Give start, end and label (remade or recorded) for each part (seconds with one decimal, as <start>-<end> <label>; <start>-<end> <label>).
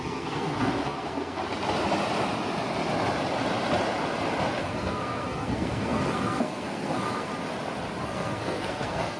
0.0-1.4 remade; 1.4-4.6 recorded; 4.6-7.3 remade; 7.3-8.0 recorded; 8.0-9.2 remade